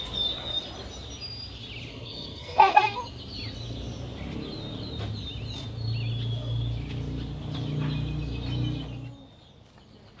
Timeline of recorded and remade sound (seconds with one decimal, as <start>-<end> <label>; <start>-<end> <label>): 0.0-1.9 recorded; 1.9-3.0 remade; 3.0-10.2 recorded